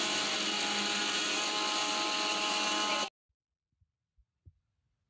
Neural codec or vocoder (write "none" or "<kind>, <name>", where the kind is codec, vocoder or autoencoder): none